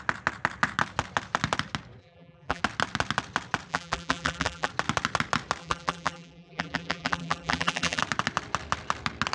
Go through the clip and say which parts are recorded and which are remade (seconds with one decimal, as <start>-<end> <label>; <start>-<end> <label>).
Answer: 0.0-2.0 recorded; 2.0-2.6 remade; 2.6-3.7 recorded; 3.7-4.7 remade; 4.7-5.6 recorded; 5.6-8.0 remade; 8.0-9.3 recorded